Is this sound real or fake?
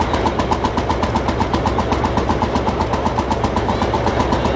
real